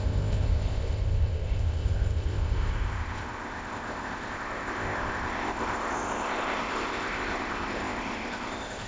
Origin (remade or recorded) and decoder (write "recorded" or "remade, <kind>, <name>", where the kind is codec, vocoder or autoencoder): remade, codec, ZipCodec